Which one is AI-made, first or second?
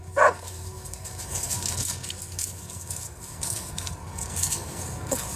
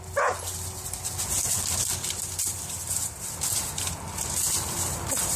first